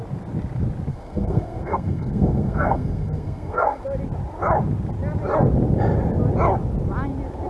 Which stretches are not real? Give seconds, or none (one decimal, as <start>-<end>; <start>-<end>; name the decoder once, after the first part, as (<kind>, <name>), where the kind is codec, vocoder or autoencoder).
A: 0.9-3.8 (codec, SNAC)